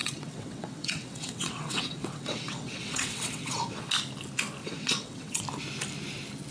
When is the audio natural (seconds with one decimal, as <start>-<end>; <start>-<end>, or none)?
3.9-4.6; 5.4-6.5